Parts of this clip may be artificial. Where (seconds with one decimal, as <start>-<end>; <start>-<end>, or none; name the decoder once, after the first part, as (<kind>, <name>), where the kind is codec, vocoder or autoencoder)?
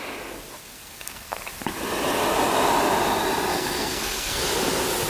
0.6-1.4 (codec, SNAC); 3.5-4.4